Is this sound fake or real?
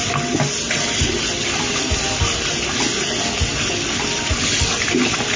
real